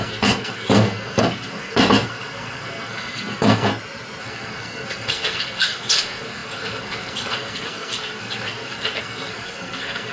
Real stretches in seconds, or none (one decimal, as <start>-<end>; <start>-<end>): 3.7-4.2